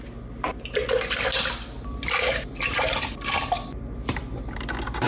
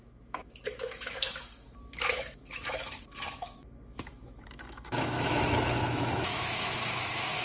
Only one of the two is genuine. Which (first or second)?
first